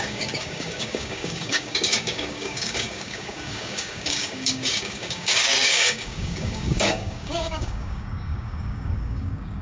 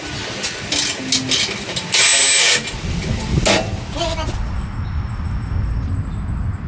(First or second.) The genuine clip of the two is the second